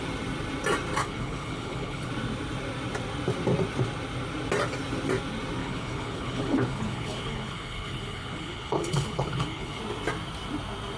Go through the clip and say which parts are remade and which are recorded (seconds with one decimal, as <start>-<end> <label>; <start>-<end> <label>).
0.0-1.0 recorded; 1.0-2.1 remade; 2.1-5.6 recorded; 5.6-9.8 remade; 9.8-11.0 recorded